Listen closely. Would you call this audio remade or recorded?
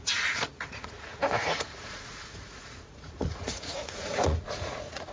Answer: remade